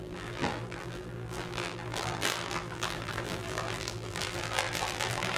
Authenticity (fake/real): fake